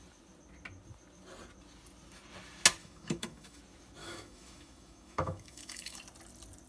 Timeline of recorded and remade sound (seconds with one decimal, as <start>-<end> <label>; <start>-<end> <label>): 0.0-2.8 recorded; 2.8-3.6 remade; 3.6-4.0 recorded; 4.0-6.0 remade; 6.0-6.7 recorded